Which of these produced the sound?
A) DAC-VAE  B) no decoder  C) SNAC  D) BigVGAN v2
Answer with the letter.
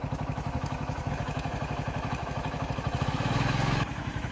A